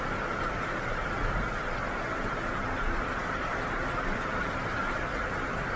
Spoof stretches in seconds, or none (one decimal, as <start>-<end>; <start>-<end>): 0.0-1.2; 2.1-5.8